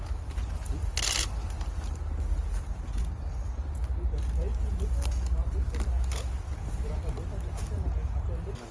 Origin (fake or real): real